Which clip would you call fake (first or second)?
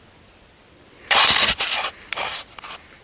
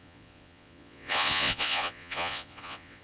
second